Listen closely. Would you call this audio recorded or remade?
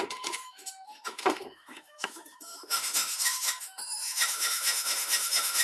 remade